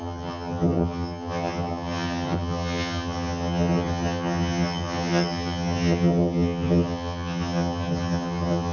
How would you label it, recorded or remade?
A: remade